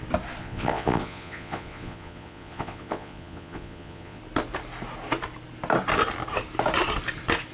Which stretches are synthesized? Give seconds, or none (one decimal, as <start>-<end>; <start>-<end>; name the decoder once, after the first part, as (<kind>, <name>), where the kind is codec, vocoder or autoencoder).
0.4-4.2 (vocoder, Vocos)